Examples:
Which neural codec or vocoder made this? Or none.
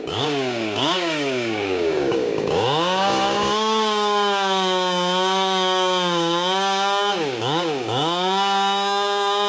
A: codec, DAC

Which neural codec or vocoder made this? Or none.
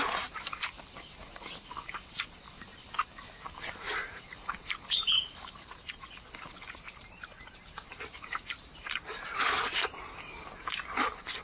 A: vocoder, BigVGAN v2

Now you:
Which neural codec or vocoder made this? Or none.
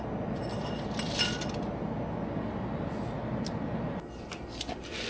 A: none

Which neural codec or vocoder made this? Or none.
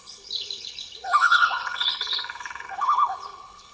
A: codec, HILCodec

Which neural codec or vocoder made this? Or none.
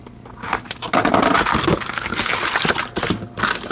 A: none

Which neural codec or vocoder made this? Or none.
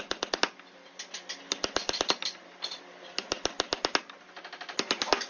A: none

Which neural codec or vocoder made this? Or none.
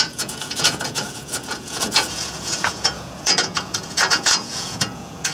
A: vocoder, Vocos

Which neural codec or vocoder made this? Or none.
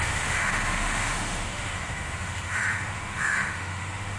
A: autoencoder, DAC-VAE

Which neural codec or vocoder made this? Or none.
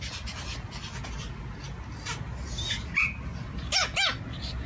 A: none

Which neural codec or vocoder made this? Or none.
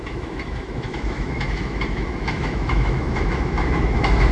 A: autoencoder, DAC-VAE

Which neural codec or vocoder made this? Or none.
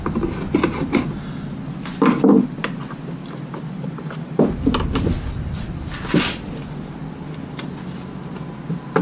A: none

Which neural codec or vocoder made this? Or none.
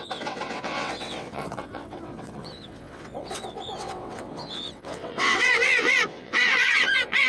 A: vocoder, WaveNeXt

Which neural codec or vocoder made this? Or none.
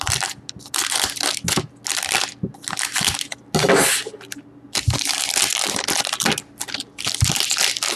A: none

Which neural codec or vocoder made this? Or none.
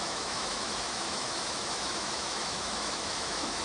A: autoencoder, DAC-VAE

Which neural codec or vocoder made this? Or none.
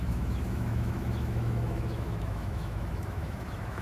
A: autoencoder, DAC-VAE